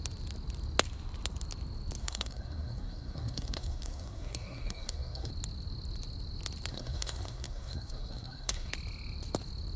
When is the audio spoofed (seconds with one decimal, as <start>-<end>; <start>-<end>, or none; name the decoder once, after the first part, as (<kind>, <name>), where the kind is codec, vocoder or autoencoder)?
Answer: 2.0-5.3 (codec, SNAC); 6.7-8.7